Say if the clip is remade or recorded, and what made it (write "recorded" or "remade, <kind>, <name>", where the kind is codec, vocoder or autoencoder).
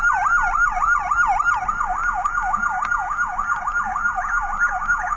remade, vocoder, BigVGAN v2